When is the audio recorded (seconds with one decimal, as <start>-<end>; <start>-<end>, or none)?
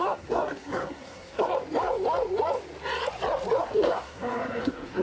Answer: 1.5-3.6